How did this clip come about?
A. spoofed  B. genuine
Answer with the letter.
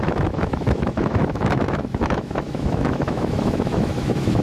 A